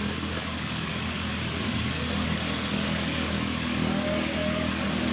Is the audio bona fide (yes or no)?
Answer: no